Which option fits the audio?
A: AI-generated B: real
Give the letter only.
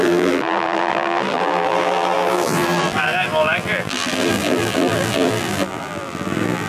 A